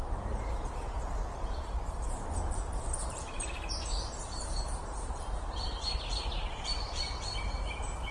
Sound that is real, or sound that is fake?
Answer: fake